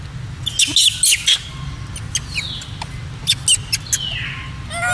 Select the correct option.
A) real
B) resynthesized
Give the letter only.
A